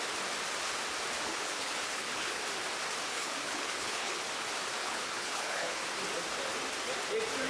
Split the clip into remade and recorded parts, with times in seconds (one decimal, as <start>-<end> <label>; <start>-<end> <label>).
0.0-1.3 recorded; 1.3-2.4 remade; 2.4-3.1 recorded; 3.1-4.2 remade; 4.2-4.8 recorded; 4.8-5.8 remade; 5.8-7.5 recorded